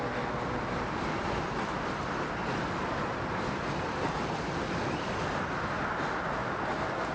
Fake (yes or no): no